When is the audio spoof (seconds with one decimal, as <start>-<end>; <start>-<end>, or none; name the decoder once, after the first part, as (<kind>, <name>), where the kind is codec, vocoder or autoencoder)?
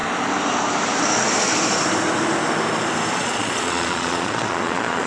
3.1-5.1 (vocoder, Vocos)